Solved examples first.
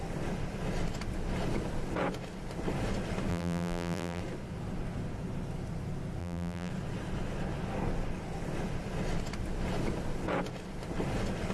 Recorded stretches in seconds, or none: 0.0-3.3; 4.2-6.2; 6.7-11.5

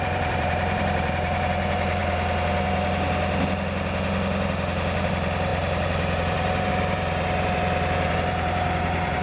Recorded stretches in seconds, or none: 2.0-5.1

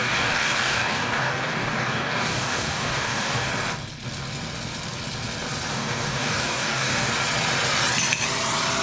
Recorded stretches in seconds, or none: 3.5-5.7; 7.1-8.8

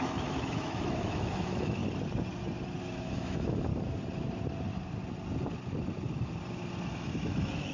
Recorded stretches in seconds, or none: 1.8-2.8; 3.7-6.9

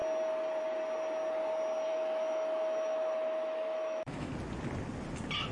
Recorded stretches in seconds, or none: 0.0-1.9; 4.3-5.5

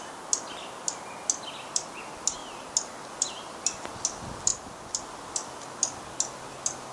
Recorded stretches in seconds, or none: 0.0-6.9